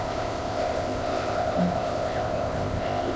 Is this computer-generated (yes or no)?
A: yes